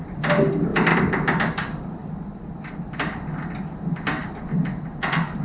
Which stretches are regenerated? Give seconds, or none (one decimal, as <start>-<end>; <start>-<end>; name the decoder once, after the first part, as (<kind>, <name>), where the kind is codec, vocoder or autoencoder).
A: none